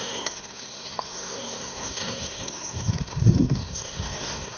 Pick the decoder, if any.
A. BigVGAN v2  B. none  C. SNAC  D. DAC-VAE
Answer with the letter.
C